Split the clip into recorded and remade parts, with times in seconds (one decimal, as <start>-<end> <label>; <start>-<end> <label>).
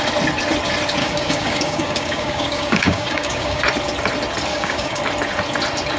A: 0.0-1.0 recorded; 1.0-3.6 remade; 3.6-4.5 recorded; 4.5-5.0 remade; 5.0-6.0 recorded